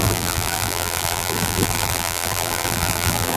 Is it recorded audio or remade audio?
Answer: remade